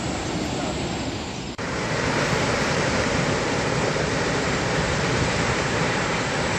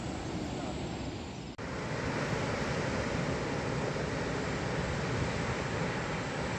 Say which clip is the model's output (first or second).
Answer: first